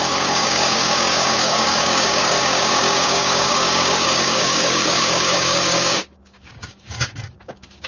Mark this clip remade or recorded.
remade